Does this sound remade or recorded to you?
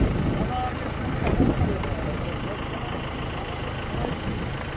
recorded